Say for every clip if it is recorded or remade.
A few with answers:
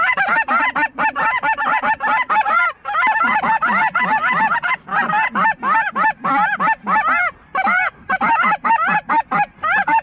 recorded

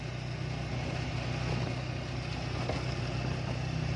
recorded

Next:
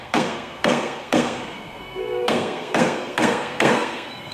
remade